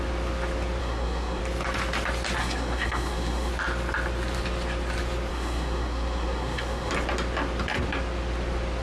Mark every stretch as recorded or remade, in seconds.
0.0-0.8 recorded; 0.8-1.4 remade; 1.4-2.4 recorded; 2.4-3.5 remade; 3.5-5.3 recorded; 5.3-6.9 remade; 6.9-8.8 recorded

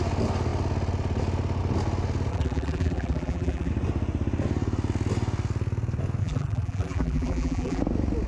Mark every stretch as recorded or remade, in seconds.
0.0-2.3 recorded; 2.3-3.7 remade; 3.7-6.2 recorded; 6.2-7.8 remade; 7.8-8.3 recorded

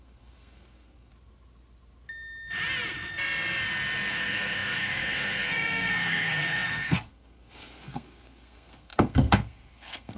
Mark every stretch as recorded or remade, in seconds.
0.0-1.1 remade; 1.1-4.1 recorded; 4.1-10.2 remade

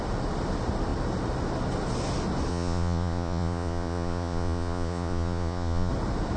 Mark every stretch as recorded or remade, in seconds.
0.0-2.5 recorded; 2.5-5.9 remade; 5.9-6.4 recorded

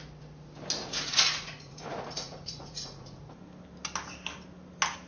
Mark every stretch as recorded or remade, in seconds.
0.0-0.8 recorded; 0.8-3.2 remade; 3.2-5.1 recorded

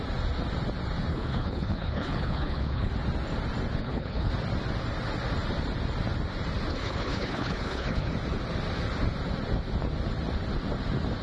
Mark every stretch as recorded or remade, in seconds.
0.0-1.1 recorded; 1.1-2.9 remade; 2.9-3.8 recorded; 3.8-4.3 remade; 4.3-6.7 recorded; 6.7-8.1 remade; 8.1-11.2 recorded

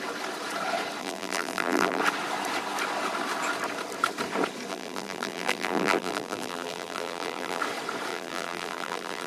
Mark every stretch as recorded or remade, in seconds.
0.0-1.0 recorded; 1.0-2.0 remade; 2.0-4.7 recorded; 4.7-7.6 remade; 7.6-8.1 recorded; 8.1-9.3 remade